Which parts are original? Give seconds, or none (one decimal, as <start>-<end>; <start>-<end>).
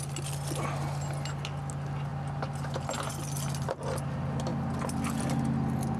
0.0-6.0